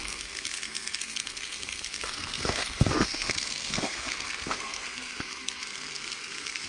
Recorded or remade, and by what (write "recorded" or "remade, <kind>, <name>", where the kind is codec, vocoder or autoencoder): remade, codec, SNAC